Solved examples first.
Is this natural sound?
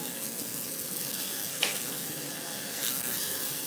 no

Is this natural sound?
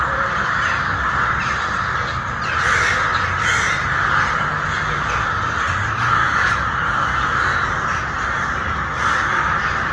yes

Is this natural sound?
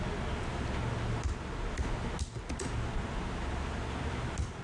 yes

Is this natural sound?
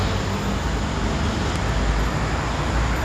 yes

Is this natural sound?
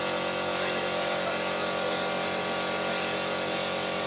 yes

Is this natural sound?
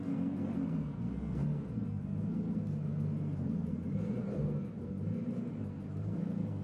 no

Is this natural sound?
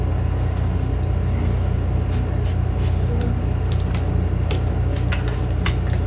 yes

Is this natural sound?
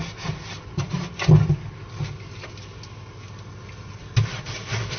yes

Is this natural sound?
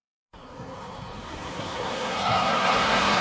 no